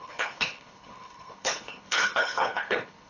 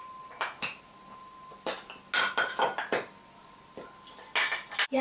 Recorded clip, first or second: second